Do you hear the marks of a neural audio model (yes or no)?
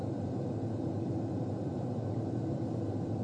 no